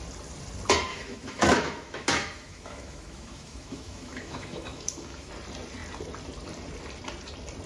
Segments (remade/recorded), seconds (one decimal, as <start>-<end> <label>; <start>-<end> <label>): 0.0-0.9 recorded; 0.9-5.3 remade; 5.3-7.7 recorded